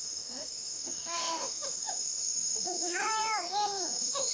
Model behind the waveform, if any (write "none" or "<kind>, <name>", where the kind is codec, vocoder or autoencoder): autoencoder, DAC-VAE